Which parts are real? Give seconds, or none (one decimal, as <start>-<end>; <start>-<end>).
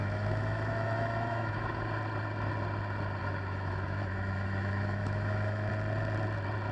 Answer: 1.8-3.2; 5.7-6.7